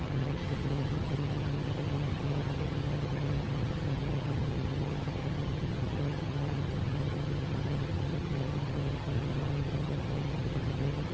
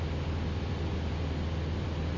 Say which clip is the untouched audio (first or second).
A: second